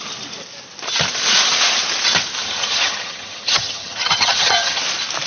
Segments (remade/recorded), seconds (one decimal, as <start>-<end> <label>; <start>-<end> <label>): 0.0-2.4 recorded; 2.4-4.8 remade; 4.8-5.3 recorded